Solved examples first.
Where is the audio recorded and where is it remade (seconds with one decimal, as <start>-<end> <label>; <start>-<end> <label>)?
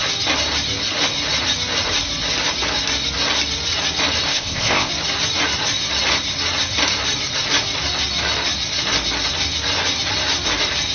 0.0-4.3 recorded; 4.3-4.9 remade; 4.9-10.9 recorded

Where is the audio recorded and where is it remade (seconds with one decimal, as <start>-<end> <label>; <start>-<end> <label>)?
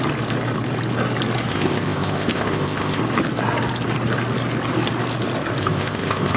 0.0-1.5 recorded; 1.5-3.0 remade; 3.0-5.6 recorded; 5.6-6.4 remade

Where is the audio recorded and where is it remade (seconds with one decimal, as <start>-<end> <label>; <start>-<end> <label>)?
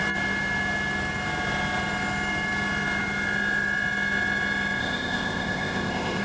0.0-4.8 recorded; 4.8-6.2 remade